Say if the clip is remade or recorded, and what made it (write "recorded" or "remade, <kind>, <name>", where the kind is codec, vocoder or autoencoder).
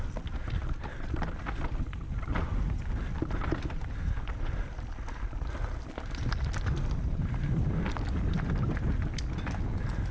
recorded